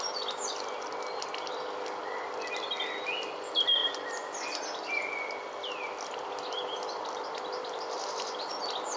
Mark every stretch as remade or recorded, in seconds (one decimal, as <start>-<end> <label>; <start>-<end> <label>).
0.0-9.0 recorded